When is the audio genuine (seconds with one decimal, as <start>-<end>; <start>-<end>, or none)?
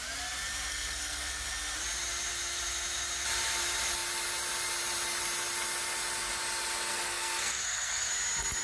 0.0-0.7; 1.5-6.9; 8.1-8.6